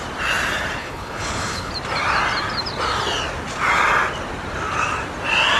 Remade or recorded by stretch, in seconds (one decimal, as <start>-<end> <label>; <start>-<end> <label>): 0.0-0.8 recorded; 0.8-1.7 remade; 1.7-5.6 recorded